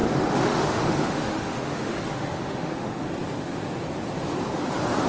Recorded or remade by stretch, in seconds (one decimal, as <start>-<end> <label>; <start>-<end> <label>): 0.0-3.1 remade; 3.1-5.1 recorded

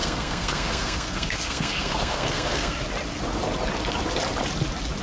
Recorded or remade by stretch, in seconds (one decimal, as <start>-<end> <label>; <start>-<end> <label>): 0.0-2.8 remade; 2.8-5.0 recorded

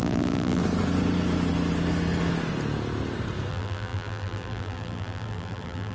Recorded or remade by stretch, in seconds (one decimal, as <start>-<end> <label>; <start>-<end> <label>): 0.0-0.6 remade; 0.6-3.5 recorded; 3.5-5.9 remade

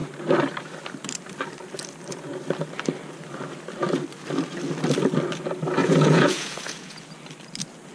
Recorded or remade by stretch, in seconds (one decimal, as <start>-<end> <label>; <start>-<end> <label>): 0.0-5.8 recorded; 5.8-7.0 remade; 7.0-7.9 recorded

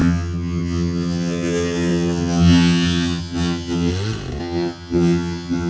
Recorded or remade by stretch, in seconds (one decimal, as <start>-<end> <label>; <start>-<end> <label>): 0.0-3.9 remade; 3.9-4.4 recorded; 4.4-5.7 remade

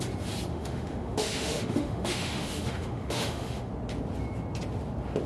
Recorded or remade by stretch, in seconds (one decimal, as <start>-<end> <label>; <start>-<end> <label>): 0.0-0.5 recorded; 0.5-3.7 remade; 3.7-5.3 recorded